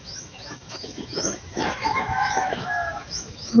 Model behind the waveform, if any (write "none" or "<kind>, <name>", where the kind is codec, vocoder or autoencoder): autoencoder, DAC-VAE